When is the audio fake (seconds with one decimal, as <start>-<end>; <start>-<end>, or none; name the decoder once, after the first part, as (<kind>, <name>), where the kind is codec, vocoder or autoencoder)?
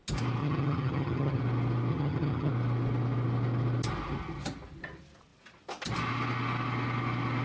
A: 0.4-1.4 (vocoder, HiFi-GAN); 1.9-2.5